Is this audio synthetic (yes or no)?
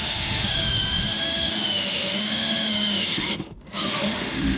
yes